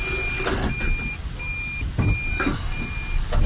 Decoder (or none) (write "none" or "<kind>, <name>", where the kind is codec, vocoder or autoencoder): none